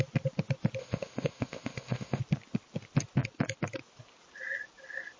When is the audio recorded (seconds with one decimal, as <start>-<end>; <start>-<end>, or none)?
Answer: 0.0-0.8; 2.2-5.2